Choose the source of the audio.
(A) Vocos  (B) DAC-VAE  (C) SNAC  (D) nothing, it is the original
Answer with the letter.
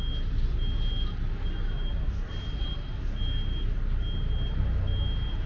D